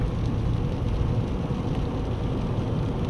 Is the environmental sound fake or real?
real